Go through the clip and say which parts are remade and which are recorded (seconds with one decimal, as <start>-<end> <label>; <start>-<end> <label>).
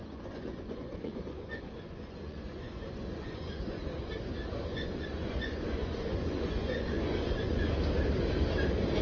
0.0-4.1 remade; 4.1-4.7 recorded; 4.7-7.7 remade; 7.7-9.0 recorded